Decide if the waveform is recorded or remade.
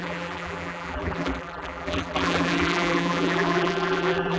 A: remade